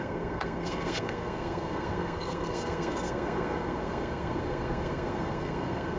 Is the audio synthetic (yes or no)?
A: yes